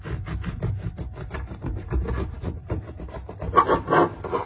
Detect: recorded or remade recorded